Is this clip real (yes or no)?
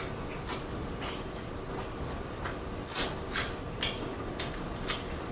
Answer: yes